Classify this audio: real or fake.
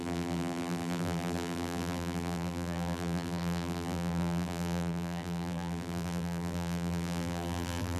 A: fake